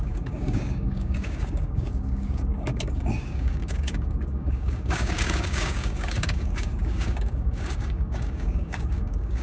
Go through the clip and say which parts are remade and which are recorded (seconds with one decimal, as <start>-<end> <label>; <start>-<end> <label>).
0.0-9.4 remade